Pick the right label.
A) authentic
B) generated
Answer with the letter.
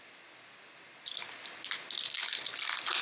A